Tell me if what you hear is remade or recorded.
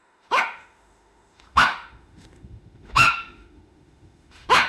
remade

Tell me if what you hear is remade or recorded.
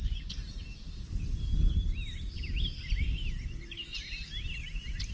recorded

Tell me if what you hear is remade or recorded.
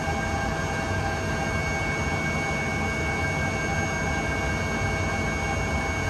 recorded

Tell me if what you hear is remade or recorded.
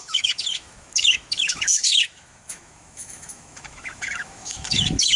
remade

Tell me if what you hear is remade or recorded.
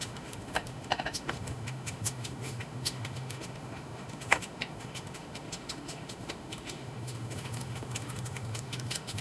remade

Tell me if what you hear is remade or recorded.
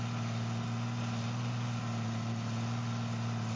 recorded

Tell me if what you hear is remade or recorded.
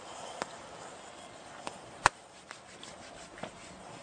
recorded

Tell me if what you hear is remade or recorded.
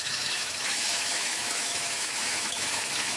remade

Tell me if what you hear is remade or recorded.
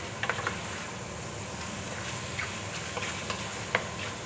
recorded